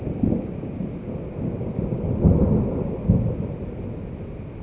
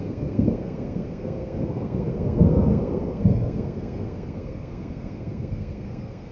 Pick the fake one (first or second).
second